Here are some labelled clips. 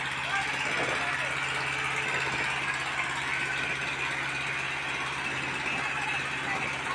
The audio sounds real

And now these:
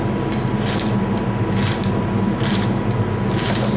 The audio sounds real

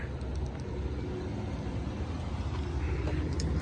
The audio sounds real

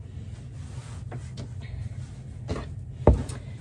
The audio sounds real